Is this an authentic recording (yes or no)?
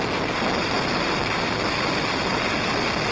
yes